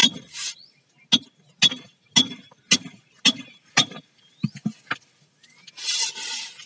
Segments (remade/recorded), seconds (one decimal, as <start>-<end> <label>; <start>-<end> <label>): 0.0-6.7 recorded